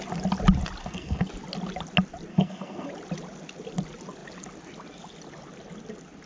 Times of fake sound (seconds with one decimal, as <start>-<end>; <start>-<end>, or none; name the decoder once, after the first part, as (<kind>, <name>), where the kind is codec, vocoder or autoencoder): 0.8-1.3 (codec, SNAC); 2.3-2.9